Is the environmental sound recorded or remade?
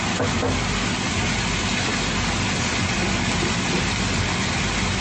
recorded